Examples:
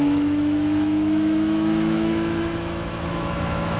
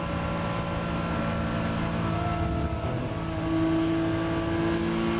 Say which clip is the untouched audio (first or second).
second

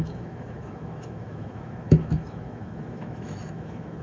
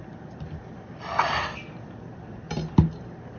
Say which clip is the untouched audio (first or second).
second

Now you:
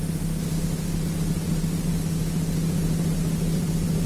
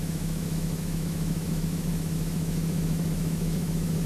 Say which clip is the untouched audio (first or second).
first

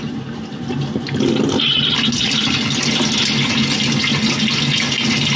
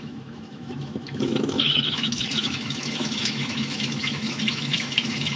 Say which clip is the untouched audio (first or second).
first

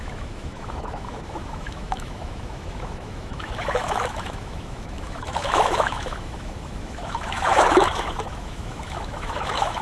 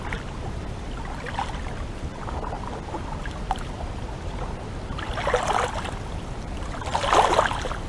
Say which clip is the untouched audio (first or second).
second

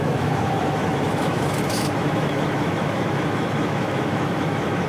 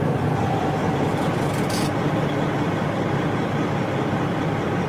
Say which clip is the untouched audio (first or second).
second